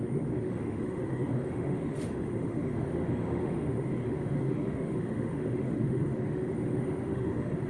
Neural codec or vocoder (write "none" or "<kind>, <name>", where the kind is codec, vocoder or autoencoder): autoencoder, DAC-VAE